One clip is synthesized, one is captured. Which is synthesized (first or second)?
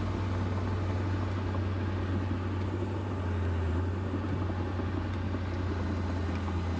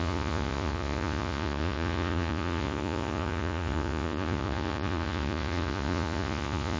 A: second